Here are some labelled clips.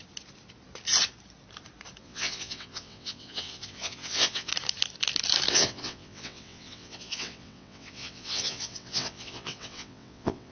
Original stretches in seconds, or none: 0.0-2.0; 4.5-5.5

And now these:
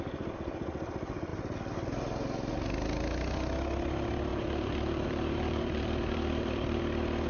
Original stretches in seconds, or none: 0.0-4.3; 6.8-7.3

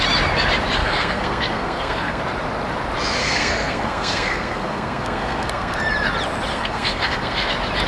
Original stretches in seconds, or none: 0.0-0.8; 2.2-3.2; 5.8-6.5; 7.5-7.9

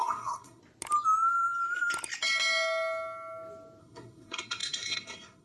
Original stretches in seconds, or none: 0.6-3.8

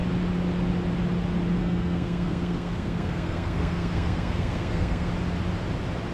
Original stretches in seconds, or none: 0.0-1.6; 5.1-6.1

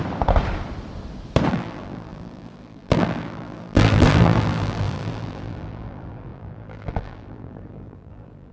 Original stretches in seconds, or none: 0.0-1.5

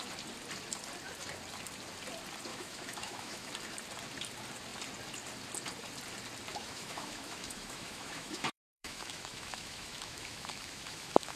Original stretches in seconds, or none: 0.0-2.5; 3.5-6.5

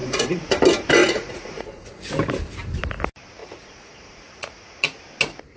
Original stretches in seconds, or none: 0.5-1.0; 2.0-3.4; 5.0-5.6